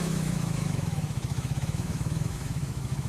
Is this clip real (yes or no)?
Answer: no